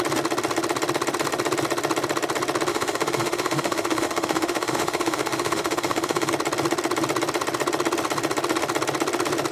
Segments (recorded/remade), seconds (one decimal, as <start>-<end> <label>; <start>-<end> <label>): 0.0-2.7 recorded; 2.7-6.3 remade; 6.3-9.5 recorded